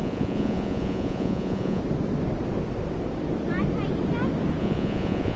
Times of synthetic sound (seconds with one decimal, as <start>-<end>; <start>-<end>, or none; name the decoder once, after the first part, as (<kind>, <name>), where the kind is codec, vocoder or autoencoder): 0.0-1.8 (vocoder, Vocos); 4.6-5.4